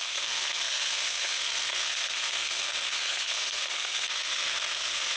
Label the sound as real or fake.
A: fake